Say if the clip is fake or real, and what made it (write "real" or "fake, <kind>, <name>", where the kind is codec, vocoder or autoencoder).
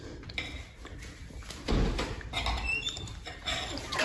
real